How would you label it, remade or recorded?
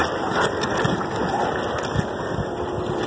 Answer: recorded